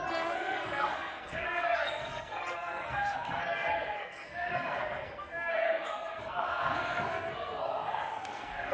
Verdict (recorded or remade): remade